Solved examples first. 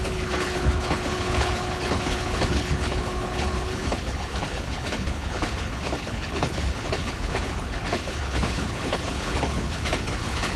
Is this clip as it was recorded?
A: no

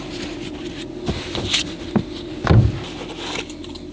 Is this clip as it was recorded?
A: yes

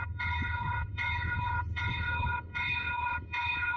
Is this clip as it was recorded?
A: no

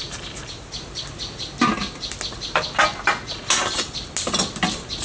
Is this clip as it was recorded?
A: yes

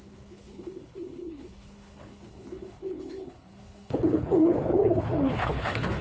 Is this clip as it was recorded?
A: no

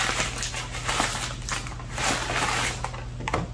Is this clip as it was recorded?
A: yes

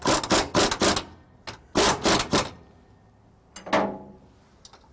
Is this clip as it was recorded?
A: yes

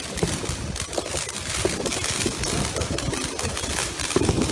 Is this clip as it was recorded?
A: yes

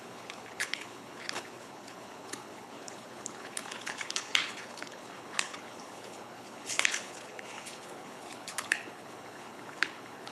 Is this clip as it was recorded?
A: no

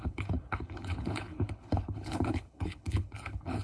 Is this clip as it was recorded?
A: no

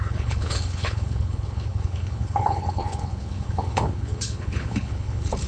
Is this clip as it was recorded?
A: no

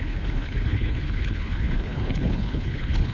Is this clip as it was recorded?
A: no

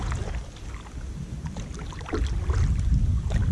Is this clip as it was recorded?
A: yes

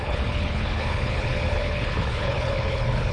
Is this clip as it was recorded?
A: no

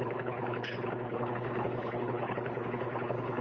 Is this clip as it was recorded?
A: no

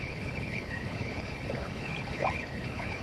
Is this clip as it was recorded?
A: no